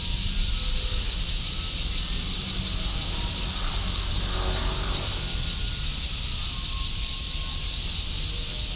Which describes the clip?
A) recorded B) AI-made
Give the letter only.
A